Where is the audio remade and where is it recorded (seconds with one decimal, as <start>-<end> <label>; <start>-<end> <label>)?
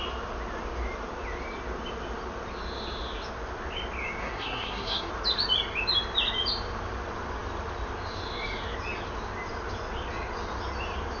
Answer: 0.0-4.2 recorded; 4.2-5.1 remade; 5.1-11.2 recorded